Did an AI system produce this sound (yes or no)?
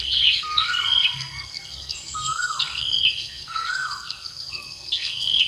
yes